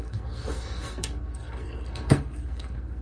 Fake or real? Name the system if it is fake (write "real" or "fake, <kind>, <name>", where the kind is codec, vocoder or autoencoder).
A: fake, codec, SNAC